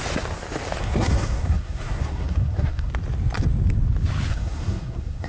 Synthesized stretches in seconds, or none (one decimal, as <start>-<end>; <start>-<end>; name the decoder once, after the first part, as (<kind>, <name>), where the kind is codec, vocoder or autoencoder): 0.8-2.9 (codec, SNAC); 4.3-5.3